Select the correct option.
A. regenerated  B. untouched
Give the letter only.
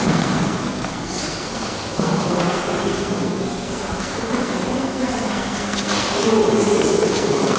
A